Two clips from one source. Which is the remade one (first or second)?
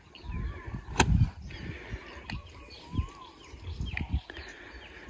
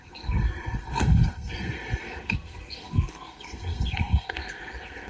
second